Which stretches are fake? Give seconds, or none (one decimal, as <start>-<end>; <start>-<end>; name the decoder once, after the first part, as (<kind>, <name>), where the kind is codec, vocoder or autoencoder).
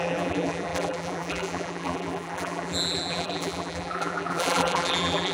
0.0-5.3 (vocoder, BigVGAN v2)